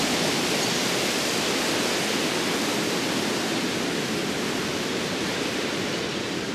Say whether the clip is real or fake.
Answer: real